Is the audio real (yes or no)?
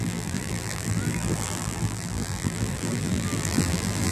no